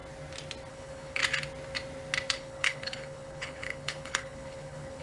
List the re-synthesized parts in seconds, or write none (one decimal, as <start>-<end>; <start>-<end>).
0.7-1.2; 2.3-5.0